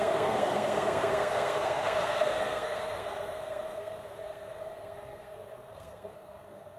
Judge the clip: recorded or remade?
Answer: remade